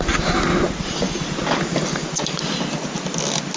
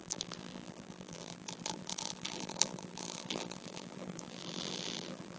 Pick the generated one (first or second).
second